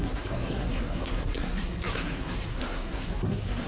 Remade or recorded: remade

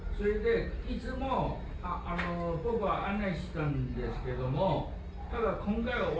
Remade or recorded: recorded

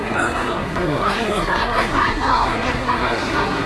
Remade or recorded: remade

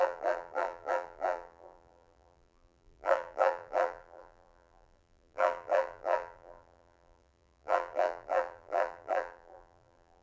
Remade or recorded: remade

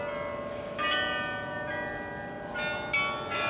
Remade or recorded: recorded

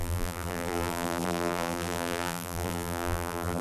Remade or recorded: remade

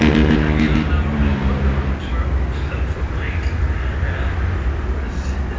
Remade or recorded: recorded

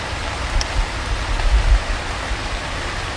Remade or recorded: recorded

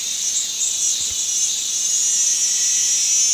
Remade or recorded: recorded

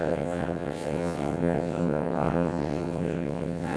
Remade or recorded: remade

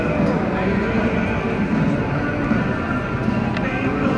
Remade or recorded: recorded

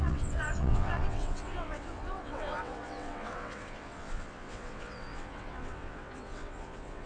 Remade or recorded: remade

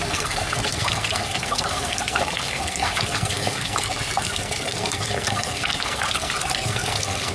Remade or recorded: remade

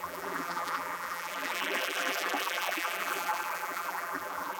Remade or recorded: remade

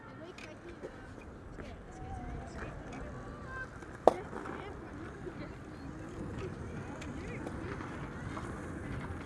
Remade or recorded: recorded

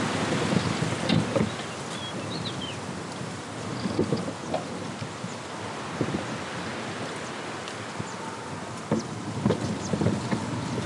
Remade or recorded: recorded